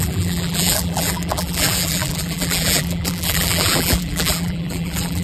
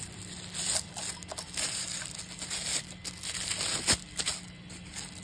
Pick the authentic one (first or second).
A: second